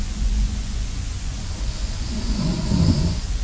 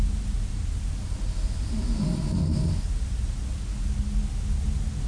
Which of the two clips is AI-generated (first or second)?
first